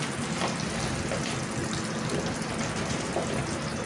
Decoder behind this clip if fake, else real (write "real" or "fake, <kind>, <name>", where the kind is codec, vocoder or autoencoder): real